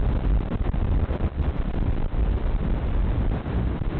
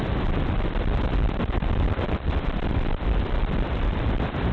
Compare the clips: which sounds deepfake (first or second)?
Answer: second